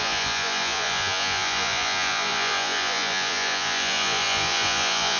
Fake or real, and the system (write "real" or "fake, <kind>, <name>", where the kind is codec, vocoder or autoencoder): fake, vocoder, Vocos